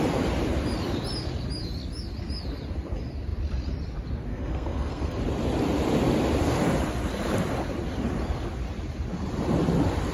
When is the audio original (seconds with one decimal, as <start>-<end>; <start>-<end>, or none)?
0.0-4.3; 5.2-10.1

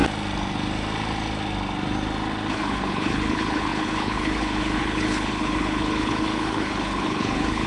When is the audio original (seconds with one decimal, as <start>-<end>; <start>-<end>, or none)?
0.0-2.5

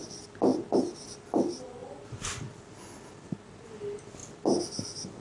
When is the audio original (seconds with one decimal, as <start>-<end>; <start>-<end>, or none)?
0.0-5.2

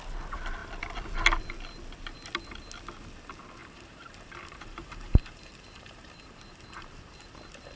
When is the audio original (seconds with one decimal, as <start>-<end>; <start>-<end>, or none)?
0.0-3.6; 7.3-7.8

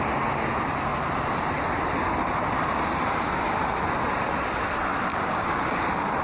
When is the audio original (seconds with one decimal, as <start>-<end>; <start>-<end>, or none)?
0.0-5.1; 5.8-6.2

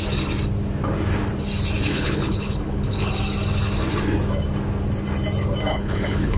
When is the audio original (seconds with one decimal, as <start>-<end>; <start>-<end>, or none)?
0.0-1.9; 3.1-5.7

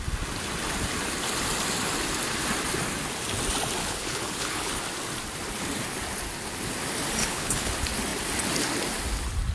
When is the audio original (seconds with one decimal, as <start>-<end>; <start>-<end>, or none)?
0.0-3.8; 4.8-7.2; 7.7-9.5

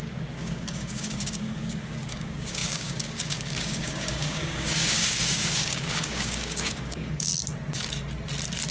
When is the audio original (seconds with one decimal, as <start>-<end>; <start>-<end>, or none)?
7.3-8.7